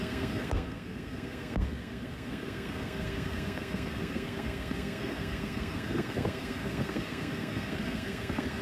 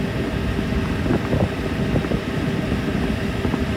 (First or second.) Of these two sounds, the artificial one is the first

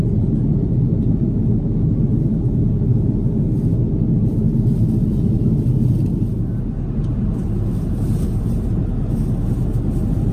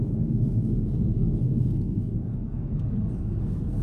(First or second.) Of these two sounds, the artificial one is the second